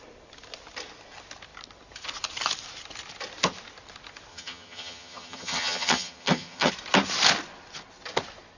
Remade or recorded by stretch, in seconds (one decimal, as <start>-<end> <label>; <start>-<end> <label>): 0.0-4.3 recorded; 4.3-6.7 remade; 6.7-8.6 recorded